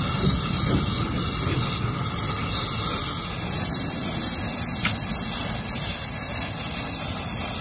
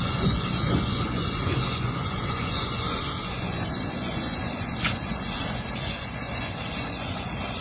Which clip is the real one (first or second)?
first